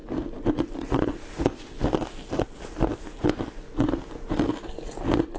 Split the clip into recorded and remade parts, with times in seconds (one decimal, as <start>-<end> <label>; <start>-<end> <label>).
0.0-5.4 recorded